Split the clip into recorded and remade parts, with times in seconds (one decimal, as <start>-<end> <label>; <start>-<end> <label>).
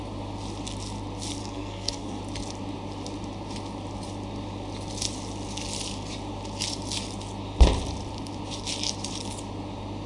0.0-1.4 recorded; 1.4-2.2 remade; 2.2-10.1 recorded